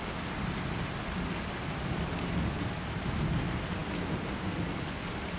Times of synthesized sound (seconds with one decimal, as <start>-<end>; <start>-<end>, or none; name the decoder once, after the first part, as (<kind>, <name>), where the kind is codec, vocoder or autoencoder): none